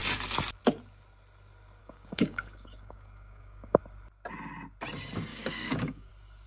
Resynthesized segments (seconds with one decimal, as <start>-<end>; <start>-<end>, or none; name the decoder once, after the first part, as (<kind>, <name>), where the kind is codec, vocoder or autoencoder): 1.8-3.8 (codec, DAC); 5.3-6.1